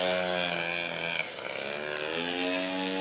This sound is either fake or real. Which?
real